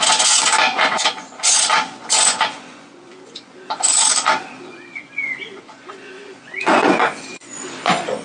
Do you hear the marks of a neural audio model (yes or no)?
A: yes